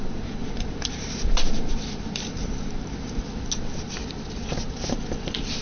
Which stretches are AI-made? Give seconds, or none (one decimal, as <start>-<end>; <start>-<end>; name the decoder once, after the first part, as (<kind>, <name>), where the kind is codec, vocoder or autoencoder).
0.4-3.2 (vocoder, BigVGAN v2)